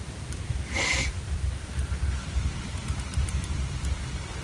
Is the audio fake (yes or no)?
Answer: yes